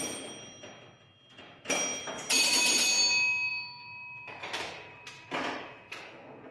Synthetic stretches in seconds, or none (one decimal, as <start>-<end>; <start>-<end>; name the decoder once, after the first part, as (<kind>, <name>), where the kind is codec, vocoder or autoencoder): none